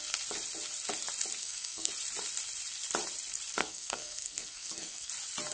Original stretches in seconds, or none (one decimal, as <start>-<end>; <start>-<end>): 0.0-1.4; 1.9-3.6; 5.1-5.5